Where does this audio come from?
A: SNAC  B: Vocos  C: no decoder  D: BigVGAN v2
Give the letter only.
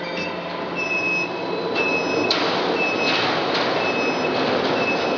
C